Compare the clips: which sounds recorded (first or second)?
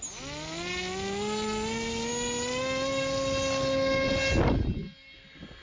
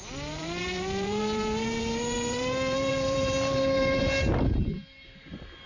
first